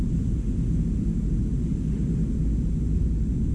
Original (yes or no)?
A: yes